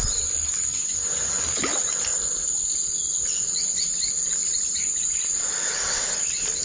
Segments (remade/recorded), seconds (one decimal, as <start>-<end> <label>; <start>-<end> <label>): 0.0-0.7 recorded; 0.7-1.4 remade; 1.4-6.6 recorded